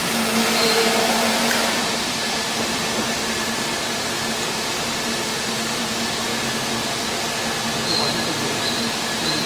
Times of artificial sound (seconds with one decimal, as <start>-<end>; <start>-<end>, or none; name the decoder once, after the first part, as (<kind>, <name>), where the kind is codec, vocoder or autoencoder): 0.0-6.3 (vocoder, BigVGAN v2); 8.1-9.5